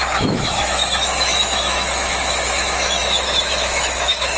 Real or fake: fake